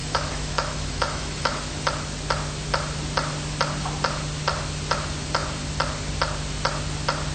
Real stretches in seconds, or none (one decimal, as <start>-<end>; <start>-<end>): 1.6-7.3